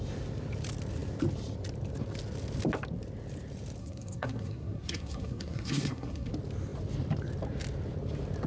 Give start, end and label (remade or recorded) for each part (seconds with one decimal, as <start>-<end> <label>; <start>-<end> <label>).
0.0-3.8 recorded; 3.8-6.3 remade; 6.3-8.5 recorded